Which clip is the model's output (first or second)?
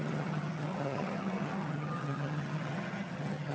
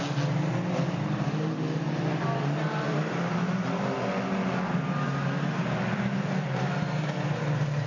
first